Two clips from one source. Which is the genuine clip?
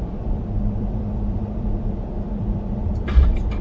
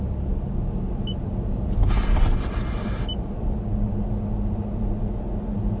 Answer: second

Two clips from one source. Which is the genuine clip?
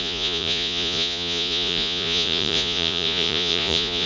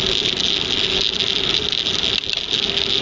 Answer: second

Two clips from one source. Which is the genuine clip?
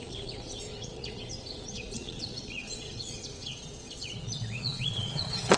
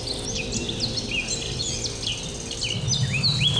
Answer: second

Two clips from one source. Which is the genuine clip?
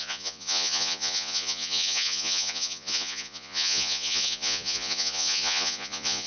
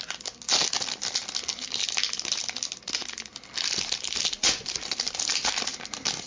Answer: second